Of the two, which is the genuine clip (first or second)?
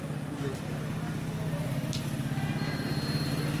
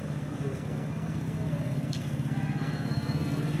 first